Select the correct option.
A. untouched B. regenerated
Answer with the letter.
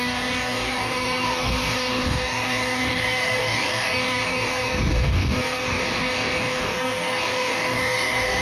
B